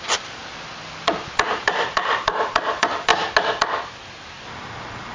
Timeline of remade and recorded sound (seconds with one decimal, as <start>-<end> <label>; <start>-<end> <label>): 0.0-0.4 remade; 0.4-1.6 recorded; 1.6-3.1 remade; 3.1-4.4 recorded; 4.4-5.1 remade